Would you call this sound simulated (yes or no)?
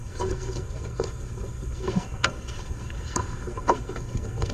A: yes